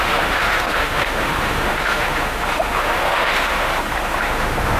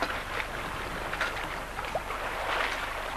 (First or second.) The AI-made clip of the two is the first